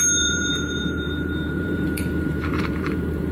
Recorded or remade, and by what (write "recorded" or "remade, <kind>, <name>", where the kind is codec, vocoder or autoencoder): remade, vocoder, BigVGAN v2